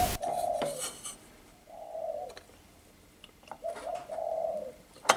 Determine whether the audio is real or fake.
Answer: real